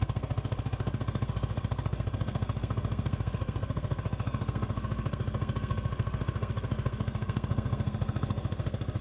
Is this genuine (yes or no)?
no